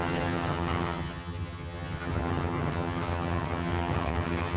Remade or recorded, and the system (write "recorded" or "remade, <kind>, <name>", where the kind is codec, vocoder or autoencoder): remade, vocoder, HiFi-GAN